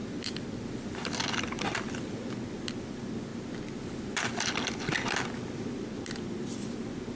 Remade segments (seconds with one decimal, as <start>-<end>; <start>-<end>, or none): none